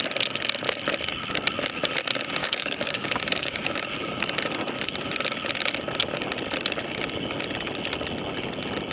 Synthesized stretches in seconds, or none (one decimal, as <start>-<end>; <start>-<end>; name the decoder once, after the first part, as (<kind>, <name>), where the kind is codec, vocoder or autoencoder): 2.4-3.7 (codec, DAC)